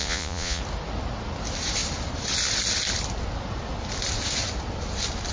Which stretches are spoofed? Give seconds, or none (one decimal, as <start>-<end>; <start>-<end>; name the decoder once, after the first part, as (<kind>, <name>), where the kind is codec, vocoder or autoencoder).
0.0-0.6 (vocoder, Vocos)

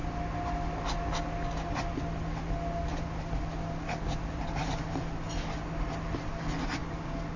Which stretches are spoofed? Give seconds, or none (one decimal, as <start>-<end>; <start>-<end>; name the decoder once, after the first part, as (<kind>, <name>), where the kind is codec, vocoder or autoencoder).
none

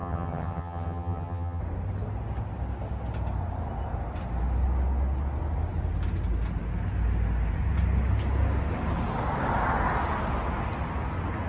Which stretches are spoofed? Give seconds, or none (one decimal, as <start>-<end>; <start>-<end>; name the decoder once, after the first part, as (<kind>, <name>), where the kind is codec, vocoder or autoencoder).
0.0-1.6 (vocoder, HiFi-GAN)

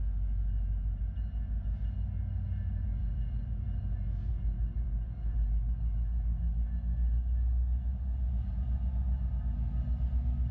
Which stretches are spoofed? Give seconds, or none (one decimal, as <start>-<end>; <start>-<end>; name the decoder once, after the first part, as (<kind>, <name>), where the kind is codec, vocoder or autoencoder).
4.3-5.8 (vocoder, BigVGAN v2)